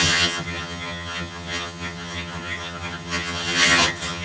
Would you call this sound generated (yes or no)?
yes